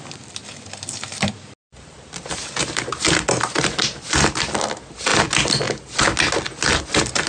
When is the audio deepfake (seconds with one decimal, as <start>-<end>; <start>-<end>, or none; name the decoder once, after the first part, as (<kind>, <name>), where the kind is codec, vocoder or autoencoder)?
none